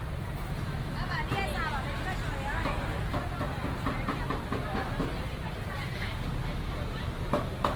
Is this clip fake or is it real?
real